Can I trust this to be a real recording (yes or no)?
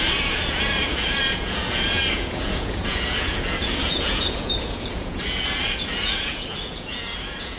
no